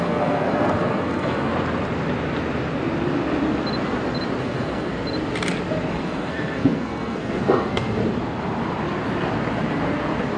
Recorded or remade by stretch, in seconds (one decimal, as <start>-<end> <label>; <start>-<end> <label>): 0.0-1.5 remade; 1.5-4.4 recorded; 4.4-4.9 remade; 4.9-5.9 recorded; 5.9-8.0 remade; 8.0-10.4 recorded